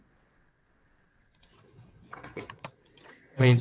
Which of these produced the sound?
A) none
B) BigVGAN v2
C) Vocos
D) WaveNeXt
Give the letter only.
D